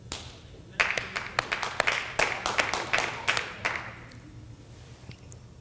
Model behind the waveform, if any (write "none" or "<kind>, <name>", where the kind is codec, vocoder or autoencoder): none